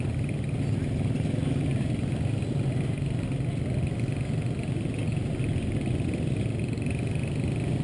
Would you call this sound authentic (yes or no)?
yes